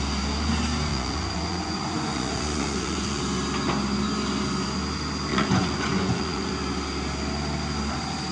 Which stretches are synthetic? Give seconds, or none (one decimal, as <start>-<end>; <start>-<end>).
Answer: 0.9-3.2; 5.3-6.5